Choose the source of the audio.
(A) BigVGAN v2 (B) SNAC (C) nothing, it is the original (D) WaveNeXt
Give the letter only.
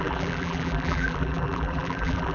A